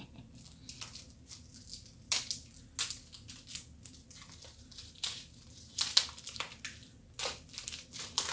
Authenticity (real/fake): real